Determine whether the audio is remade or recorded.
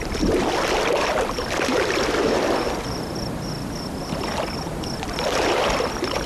recorded